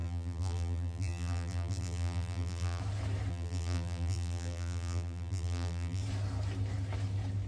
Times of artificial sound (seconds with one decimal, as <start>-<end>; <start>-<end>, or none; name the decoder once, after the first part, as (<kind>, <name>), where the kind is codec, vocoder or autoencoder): 0.0-2.8 (vocoder, BigVGAN v2); 3.3-6.0